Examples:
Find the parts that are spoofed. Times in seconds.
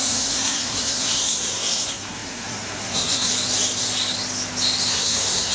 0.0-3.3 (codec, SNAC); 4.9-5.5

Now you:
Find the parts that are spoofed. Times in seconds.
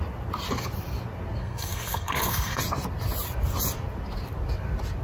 1.4-2.6 (codec, SNAC)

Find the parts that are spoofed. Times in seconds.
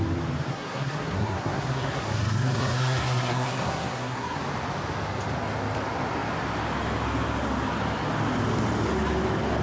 0.5-4.4 (codec, SNAC)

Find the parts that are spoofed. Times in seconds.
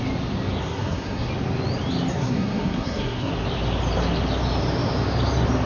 0.6-1.3 (codec, SNAC); 2.1-3.3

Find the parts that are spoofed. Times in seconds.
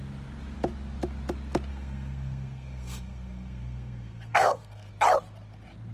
1.7-4.9 (codec, SNAC)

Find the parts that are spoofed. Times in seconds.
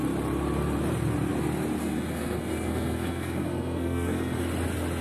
1.8-4.4 (codec, SNAC)